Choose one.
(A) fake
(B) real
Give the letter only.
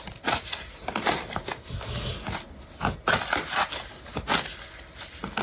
B